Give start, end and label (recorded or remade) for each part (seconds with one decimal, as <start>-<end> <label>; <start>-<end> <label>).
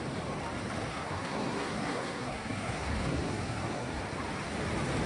0.0-0.9 recorded; 0.9-4.0 remade; 4.0-5.1 recorded